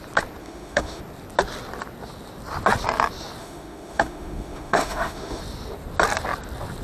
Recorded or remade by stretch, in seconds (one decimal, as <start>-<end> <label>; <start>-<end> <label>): 0.0-0.4 recorded; 0.4-1.0 remade; 1.0-3.4 recorded; 3.4-5.4 remade; 5.4-6.8 recorded